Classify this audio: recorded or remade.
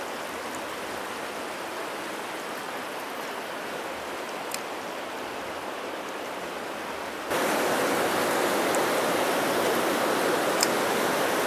recorded